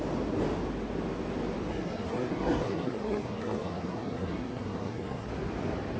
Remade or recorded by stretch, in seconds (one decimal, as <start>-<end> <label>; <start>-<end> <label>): 0.0-1.7 recorded; 1.7-5.3 remade; 5.3-6.0 recorded